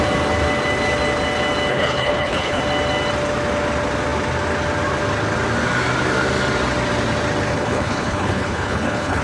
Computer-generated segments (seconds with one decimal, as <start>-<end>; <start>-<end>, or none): 1.7-2.6; 7.5-9.2

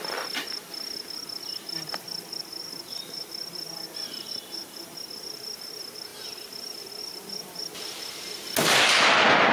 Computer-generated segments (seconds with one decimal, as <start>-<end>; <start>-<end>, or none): none